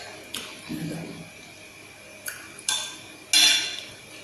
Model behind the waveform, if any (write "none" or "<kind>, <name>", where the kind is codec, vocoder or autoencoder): none